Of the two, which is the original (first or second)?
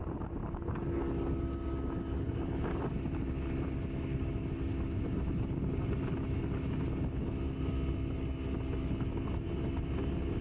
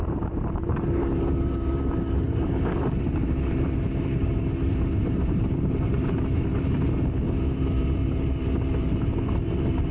first